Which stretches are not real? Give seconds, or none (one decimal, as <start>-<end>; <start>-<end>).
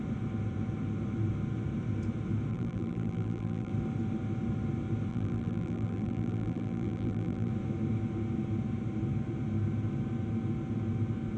2.5-3.7; 5.1-7.5